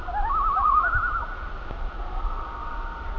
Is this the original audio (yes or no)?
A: yes